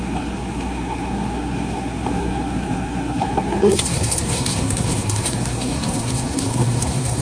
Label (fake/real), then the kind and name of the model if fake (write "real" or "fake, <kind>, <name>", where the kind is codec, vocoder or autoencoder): fake, codec, SNAC